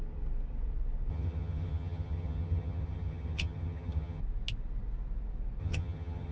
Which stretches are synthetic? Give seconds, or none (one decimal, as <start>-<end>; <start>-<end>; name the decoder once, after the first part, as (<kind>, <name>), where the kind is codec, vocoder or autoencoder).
1.1-4.2 (vocoder, HiFi-GAN); 5.6-6.3